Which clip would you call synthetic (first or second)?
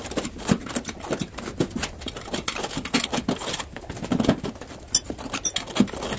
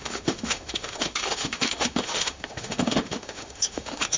second